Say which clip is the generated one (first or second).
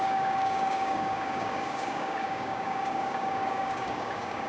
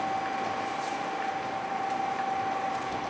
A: first